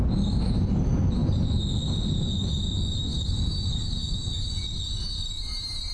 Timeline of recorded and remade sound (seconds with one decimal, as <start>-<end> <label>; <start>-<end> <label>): 0.0-5.9 recorded